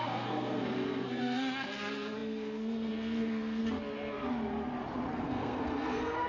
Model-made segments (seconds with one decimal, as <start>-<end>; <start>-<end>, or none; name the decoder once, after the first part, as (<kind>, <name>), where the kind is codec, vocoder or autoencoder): 0.0-3.6 (codec, SNAC); 5.2-6.3